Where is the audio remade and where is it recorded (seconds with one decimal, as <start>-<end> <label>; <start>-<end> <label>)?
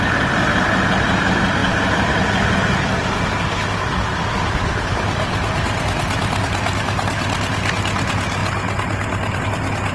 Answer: 0.0-1.6 recorded; 1.6-4.9 remade; 4.9-9.9 recorded